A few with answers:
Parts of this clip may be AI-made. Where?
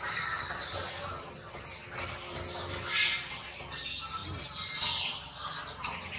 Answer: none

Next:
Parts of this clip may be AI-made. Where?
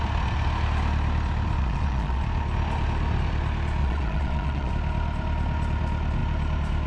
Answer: 1.6-2.2 (vocoder, Vocos); 3.8-4.7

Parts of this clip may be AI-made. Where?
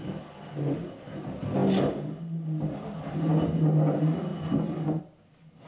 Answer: none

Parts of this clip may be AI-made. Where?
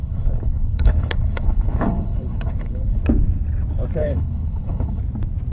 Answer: 0.0-3.0 (codec, HILCodec); 4.0-5.0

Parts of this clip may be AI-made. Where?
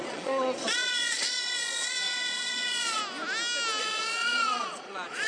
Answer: 0.0-3.0 (vocoder, Vocos); 3.8-5.3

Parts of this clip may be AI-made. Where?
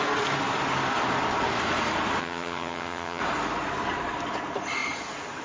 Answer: 2.2-3.2 (vocoder, HiFi-GAN)